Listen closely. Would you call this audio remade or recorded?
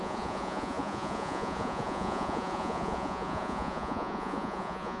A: remade